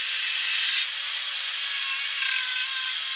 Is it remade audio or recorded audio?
recorded